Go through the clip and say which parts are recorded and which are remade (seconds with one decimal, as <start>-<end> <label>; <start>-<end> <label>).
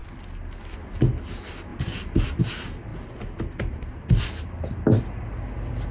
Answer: 0.0-5.9 recorded